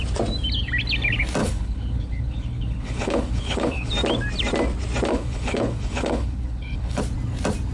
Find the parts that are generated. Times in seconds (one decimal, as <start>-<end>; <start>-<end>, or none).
1.4-3.9; 5.1-7.0